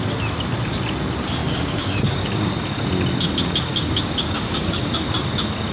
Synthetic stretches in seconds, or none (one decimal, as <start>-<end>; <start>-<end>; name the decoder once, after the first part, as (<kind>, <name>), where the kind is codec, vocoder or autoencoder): 1.4-2.5 (codec, DAC); 3.7-4.8